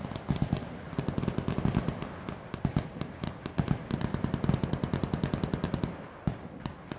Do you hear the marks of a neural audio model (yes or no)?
no